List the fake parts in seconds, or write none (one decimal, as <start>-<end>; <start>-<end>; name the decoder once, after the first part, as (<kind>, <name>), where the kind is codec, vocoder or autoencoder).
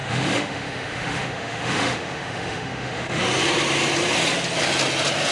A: 0.0-3.2 (autoencoder, DAC-VAE)